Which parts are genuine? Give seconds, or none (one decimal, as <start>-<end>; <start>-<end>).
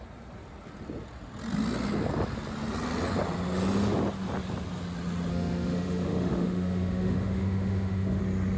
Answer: 0.0-5.3; 8.2-8.6